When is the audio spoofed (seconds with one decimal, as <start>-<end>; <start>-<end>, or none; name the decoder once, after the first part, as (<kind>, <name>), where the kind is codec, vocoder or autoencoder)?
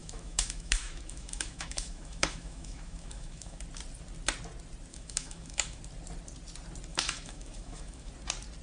0.0-3.6 (autoencoder, DAC-VAE); 4.9-5.8; 6.9-8.1